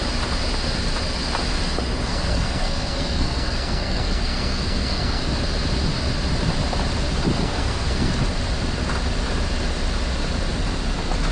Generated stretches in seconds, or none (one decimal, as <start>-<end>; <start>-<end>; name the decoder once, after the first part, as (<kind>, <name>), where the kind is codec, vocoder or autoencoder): 2.1-5.3 (codec, SNAC); 7.4-8.1